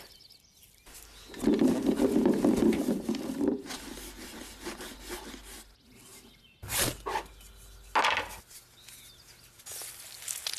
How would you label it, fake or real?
real